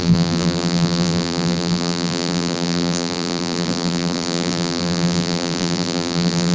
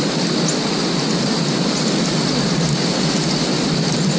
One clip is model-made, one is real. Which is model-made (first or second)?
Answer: first